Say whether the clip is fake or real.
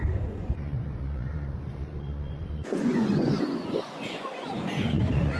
fake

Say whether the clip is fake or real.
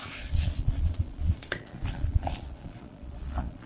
fake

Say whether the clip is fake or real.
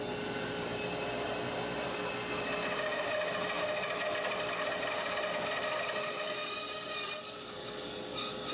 real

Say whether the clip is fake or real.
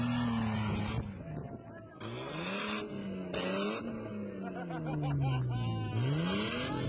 real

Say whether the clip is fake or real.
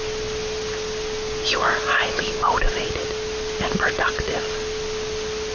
real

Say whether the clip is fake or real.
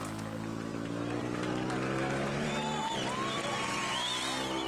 real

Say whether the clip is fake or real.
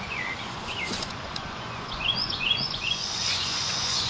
fake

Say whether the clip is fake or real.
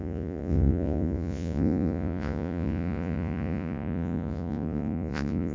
fake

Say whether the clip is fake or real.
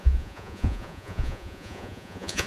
fake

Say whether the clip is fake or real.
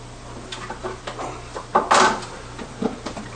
real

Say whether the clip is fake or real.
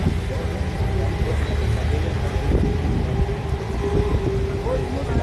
real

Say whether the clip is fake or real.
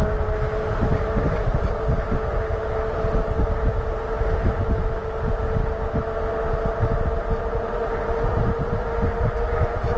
real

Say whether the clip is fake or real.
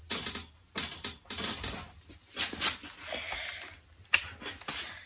real